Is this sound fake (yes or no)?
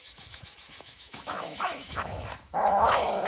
yes